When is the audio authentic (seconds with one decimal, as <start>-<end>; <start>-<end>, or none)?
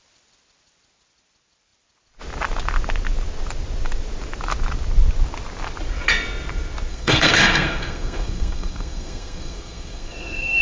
0.0-6.9